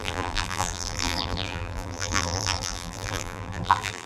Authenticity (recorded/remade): remade